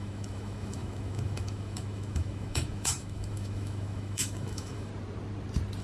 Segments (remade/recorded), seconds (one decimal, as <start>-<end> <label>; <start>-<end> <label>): 0.0-4.9 remade; 4.9-5.8 recorded